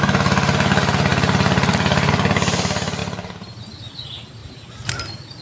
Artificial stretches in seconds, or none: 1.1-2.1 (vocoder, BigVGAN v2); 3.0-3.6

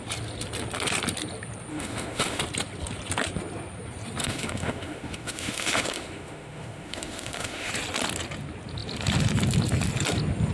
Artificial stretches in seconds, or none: 1.7-2.4 (autoencoder, DAC-VAE); 4.2-7.7

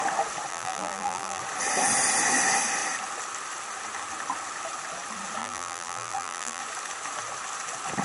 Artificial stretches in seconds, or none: 0.5-1.4 (vocoder, BigVGAN v2); 5.4-6.6

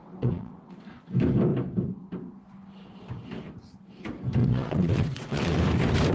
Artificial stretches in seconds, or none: 0.0-0.9 (vocoder, WaveNeXt); 4.4-5.6

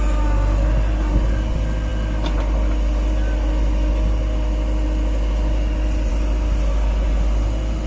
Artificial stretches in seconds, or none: none

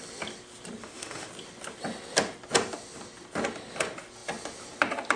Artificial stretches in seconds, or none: 0.8-1.3 (autoencoder, DAC-VAE)

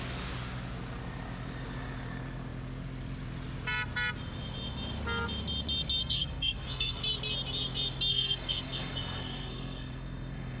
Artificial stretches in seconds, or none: 6.0-7.0 (codec, SNAC); 8.1-10.6

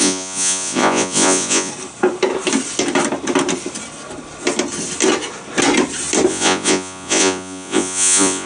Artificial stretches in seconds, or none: 0.0-1.7 (vocoder, Vocos); 6.3-8.5